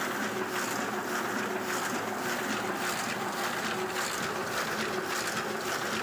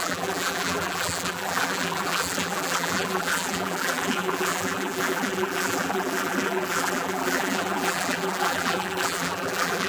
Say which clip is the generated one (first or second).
second